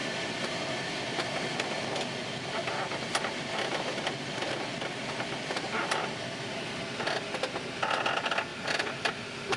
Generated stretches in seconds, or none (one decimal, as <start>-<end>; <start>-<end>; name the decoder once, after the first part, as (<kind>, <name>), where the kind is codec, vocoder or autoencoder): 4.7-6.8 (vocoder, BigVGAN v2); 8.5-9.6